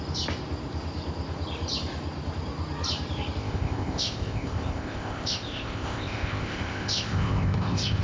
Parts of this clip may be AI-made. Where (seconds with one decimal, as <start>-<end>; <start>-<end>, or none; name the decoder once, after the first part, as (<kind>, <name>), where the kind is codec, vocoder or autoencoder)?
3.4-8.0 (codec, ZipCodec)